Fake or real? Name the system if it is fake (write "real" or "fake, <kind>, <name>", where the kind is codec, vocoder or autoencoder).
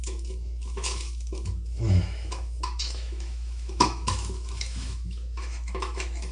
fake, autoencoder, DAC-VAE